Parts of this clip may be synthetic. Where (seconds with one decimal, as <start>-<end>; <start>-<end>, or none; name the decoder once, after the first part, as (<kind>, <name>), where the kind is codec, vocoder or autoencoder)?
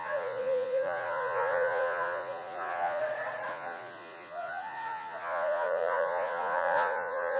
0.0-3.0 (vocoder, Vocos); 3.5-7.4